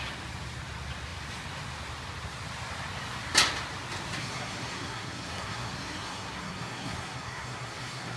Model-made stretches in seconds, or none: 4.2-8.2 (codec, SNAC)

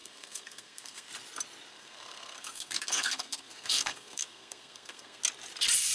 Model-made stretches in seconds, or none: 0.0-1.1 (codec, SNAC); 1.7-5.2

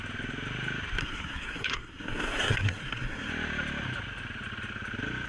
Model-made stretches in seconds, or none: 1.0-3.3 (codec, SNAC)